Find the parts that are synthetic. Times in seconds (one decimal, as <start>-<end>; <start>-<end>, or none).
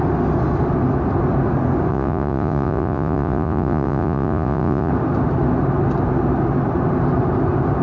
1.9-4.9